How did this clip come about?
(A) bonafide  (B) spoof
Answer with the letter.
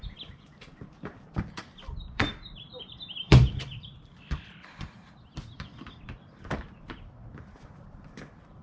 B